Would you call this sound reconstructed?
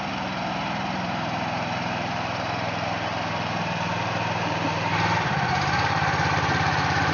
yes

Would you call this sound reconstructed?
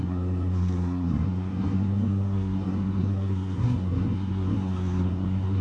yes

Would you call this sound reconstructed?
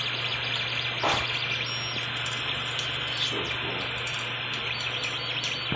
no